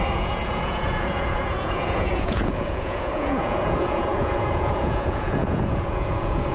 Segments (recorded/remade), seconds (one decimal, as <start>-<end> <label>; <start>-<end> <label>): 0.0-6.5 remade